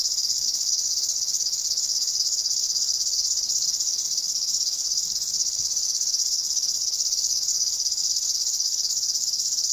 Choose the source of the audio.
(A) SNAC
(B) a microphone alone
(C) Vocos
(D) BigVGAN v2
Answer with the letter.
A